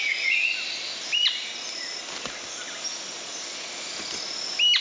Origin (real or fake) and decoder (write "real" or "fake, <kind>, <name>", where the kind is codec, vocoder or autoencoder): real